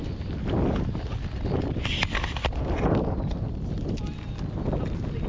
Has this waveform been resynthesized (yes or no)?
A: no